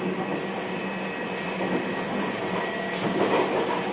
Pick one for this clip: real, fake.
real